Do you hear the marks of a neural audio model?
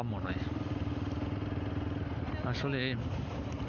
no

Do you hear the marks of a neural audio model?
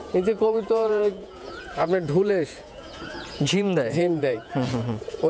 yes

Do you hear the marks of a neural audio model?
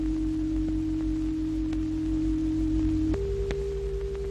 no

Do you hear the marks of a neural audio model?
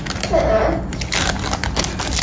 no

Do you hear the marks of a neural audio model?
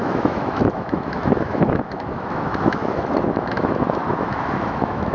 yes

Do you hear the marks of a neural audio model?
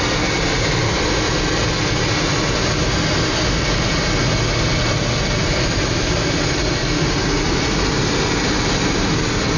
no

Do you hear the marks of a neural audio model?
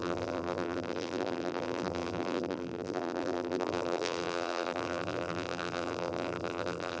yes